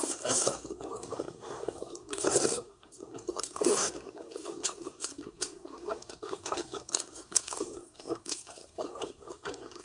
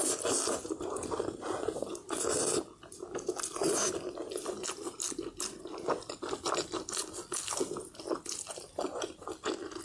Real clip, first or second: second